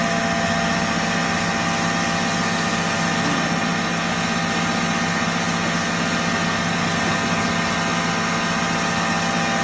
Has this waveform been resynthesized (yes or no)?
no